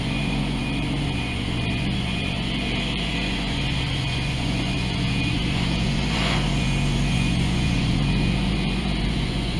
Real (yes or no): no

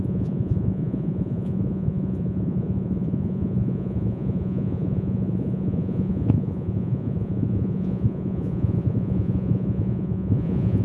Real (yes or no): no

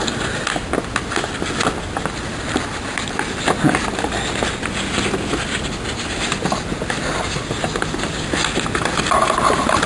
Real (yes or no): yes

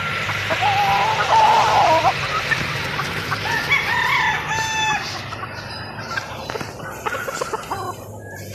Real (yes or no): yes